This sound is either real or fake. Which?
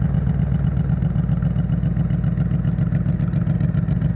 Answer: real